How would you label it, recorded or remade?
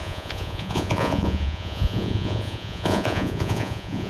remade